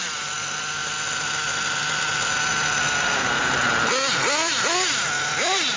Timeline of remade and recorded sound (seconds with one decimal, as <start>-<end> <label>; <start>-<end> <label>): 0.0-5.8 recorded

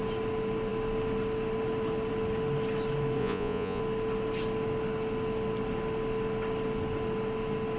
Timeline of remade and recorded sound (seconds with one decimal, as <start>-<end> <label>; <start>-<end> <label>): 0.0-3.2 recorded; 3.2-3.8 remade; 3.8-7.8 recorded